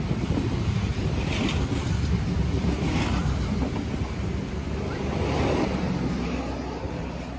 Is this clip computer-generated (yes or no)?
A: no